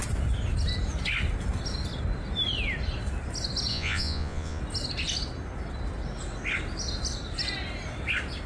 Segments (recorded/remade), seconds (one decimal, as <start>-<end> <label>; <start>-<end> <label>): 0.0-3.7 recorded; 3.7-4.6 remade; 4.6-8.5 recorded